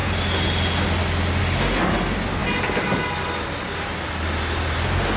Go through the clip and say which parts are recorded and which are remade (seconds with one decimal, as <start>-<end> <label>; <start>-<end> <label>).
0.0-5.2 recorded